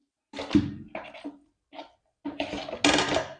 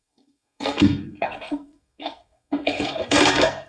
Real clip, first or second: first